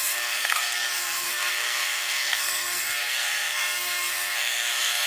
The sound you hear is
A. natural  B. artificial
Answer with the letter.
B